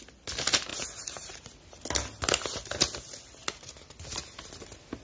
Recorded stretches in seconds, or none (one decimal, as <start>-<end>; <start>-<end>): 0.0-5.0